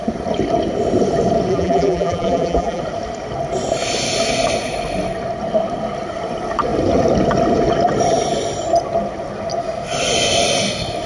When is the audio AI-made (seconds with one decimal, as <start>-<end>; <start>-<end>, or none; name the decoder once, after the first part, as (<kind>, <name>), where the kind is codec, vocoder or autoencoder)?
1.5-2.8 (vocoder, BigVGAN v2)